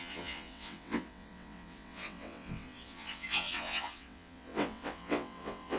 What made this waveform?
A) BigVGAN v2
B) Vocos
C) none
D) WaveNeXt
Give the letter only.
D